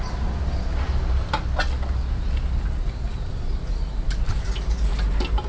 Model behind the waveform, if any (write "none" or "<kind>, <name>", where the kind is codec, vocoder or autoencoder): none